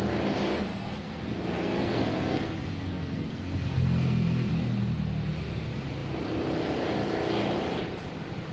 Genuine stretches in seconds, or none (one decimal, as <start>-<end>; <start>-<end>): 0.0-0.7; 4.5-8.5